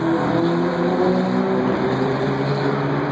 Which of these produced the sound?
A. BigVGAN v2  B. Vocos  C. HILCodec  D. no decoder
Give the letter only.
D